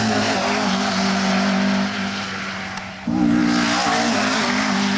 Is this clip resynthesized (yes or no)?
no